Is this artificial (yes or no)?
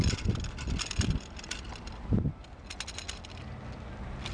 no